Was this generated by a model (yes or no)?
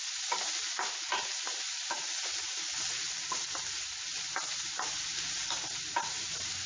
no